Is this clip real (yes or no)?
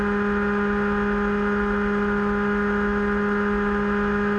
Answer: yes